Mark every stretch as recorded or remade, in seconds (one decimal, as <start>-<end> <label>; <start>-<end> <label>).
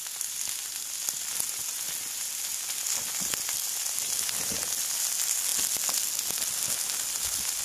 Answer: 0.0-7.6 recorded